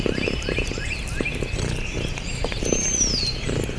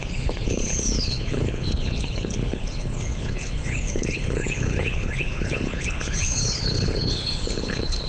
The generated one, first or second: second